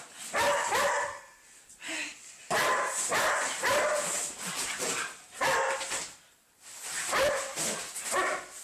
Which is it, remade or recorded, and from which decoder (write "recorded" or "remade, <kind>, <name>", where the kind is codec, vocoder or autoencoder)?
recorded